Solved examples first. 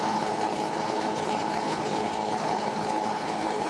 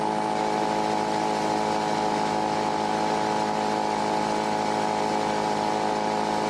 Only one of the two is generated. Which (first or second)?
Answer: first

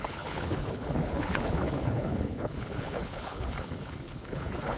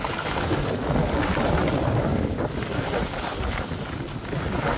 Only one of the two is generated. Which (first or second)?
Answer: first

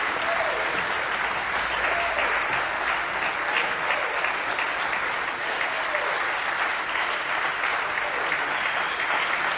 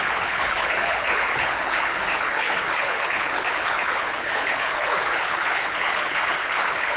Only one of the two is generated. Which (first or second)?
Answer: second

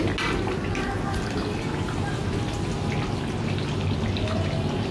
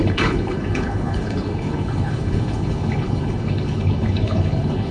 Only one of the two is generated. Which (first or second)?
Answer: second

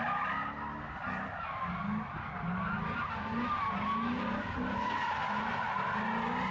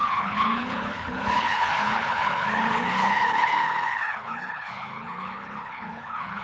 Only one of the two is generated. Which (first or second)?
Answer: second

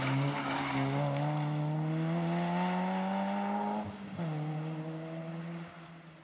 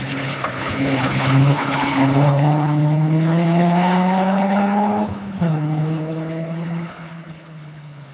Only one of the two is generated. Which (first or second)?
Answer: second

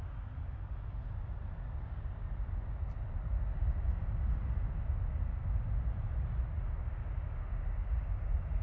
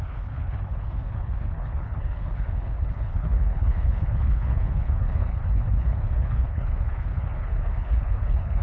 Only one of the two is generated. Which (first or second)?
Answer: second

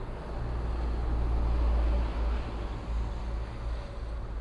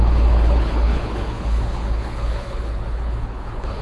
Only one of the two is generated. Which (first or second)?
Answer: second